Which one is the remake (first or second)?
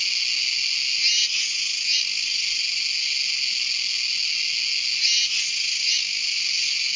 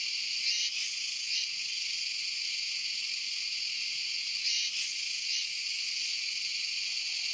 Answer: second